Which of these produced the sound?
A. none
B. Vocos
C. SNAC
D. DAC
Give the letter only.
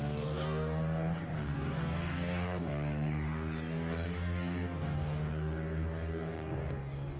D